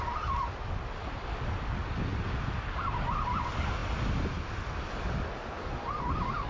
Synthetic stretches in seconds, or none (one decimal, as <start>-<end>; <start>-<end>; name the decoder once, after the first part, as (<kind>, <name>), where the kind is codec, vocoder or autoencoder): none